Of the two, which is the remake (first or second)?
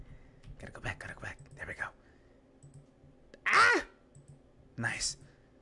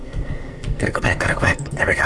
second